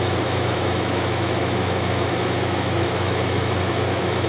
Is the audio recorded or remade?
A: remade